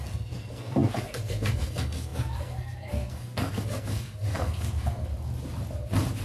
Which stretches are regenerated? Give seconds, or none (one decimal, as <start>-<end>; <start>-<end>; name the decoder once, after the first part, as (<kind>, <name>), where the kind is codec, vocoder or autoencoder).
0.0-5.1 (codec, SNAC)